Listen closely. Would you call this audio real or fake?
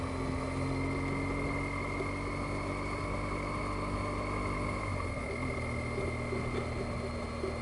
real